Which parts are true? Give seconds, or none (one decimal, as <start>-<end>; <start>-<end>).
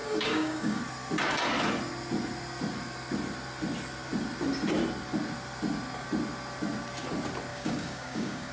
0.8-7.5